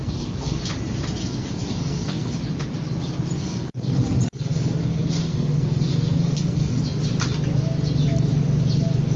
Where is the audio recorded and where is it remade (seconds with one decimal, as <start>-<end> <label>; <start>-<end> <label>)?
0.0-0.6 remade; 0.6-1.2 recorded; 1.2-2.4 remade; 2.4-3.4 recorded; 3.4-6.8 remade; 6.8-9.2 recorded